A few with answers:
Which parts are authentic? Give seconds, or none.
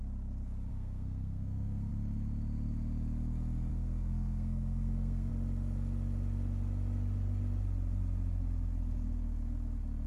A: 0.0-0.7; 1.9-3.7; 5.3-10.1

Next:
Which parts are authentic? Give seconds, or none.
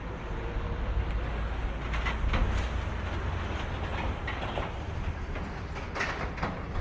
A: 0.0-6.8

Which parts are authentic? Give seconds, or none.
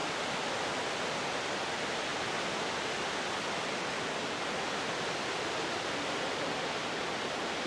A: 0.0-7.7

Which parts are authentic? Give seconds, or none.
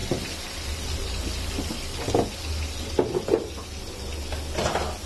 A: 0.0-5.1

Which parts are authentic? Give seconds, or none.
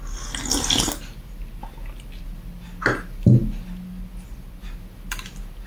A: 0.0-5.7